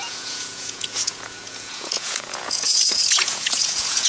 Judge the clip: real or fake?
fake